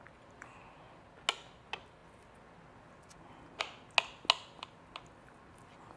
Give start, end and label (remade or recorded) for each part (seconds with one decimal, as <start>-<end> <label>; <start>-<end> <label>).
0.0-6.0 recorded